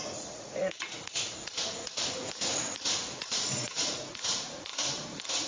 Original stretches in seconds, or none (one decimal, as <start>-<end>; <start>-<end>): none